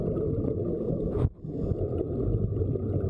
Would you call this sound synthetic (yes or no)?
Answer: no